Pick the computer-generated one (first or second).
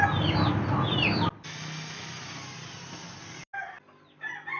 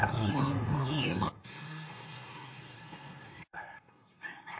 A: second